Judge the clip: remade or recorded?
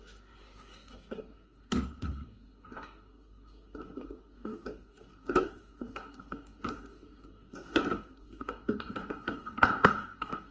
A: remade